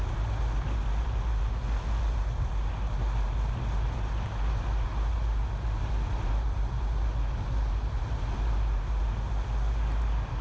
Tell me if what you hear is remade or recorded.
recorded